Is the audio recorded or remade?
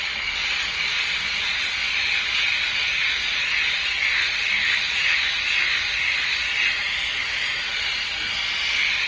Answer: recorded